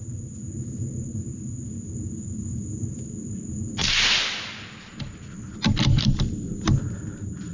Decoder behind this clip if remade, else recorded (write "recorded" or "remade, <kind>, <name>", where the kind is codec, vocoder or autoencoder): recorded